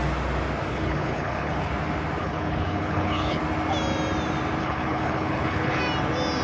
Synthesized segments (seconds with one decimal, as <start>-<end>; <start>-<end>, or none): 0.7-1.7; 2.2-3.4; 4.6-5.8